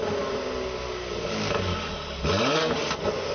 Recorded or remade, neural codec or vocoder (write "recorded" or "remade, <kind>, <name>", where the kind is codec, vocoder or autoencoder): recorded